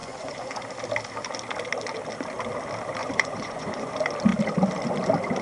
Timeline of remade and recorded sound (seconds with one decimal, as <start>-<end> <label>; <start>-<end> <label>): 0.0-0.6 remade; 0.6-3.0 recorded; 3.0-3.9 remade; 3.9-5.4 recorded